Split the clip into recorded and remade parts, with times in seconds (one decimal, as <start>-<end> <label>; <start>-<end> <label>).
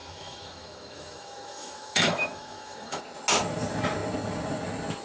0.0-3.0 remade; 3.0-5.0 recorded